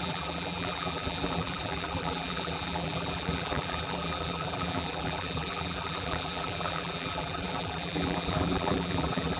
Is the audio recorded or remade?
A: remade